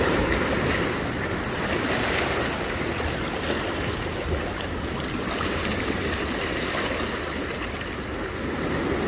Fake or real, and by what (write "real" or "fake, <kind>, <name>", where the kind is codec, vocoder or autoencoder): real